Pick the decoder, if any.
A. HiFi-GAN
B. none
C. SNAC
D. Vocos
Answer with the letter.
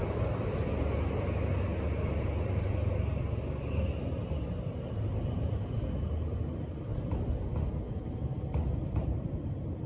B